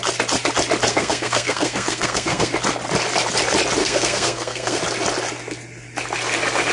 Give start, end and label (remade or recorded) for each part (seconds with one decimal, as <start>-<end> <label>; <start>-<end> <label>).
0.0-0.9 recorded; 0.9-2.5 remade; 2.5-3.8 recorded; 3.8-4.8 remade; 4.8-6.7 recorded